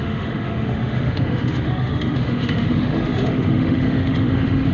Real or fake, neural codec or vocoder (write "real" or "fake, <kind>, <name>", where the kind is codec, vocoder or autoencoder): fake, autoencoder, DAC-VAE